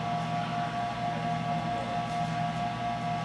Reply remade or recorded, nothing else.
recorded